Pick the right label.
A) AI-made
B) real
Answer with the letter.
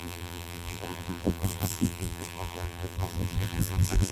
A